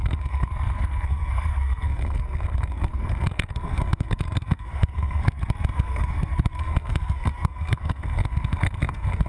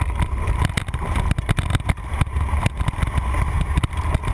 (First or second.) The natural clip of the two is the second